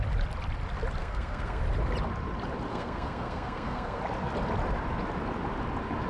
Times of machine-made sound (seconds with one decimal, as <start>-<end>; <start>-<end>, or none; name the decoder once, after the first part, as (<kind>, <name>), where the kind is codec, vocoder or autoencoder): 1.0-1.6 (codec, SNAC); 2.7-4.0